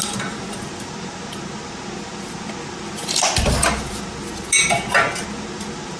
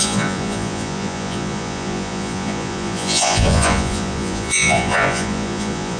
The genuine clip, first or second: first